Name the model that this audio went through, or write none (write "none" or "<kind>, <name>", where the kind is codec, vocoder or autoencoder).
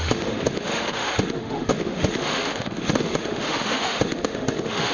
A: autoencoder, DAC-VAE